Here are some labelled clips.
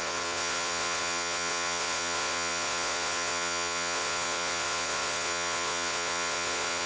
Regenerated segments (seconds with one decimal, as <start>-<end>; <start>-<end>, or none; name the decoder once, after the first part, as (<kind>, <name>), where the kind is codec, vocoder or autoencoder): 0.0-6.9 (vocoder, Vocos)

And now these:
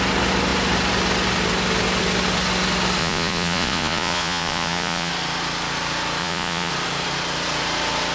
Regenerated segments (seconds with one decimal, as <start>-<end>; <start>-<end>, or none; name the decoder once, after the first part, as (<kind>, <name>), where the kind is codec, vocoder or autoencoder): 3.0-5.1 (vocoder, Vocos); 6.2-6.7

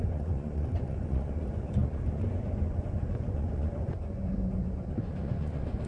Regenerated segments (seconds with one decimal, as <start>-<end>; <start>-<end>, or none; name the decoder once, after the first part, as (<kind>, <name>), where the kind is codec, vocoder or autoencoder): 0.0-5.9 (vocoder, Vocos)